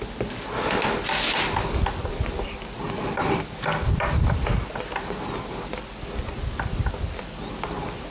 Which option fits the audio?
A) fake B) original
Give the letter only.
B